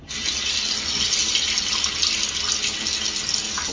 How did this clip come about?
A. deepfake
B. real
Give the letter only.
B